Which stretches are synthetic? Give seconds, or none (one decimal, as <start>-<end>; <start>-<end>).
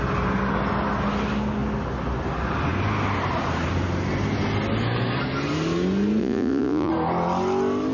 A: 6.2-6.9